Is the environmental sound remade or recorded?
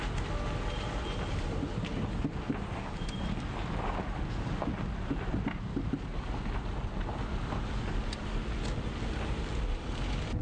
recorded